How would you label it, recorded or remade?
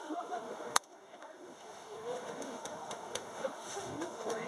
remade